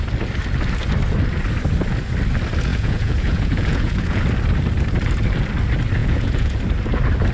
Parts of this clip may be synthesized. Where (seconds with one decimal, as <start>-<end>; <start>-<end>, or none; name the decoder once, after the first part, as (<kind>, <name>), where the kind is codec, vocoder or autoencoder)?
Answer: 2.7-4.2 (vocoder, Vocos); 6.0-6.6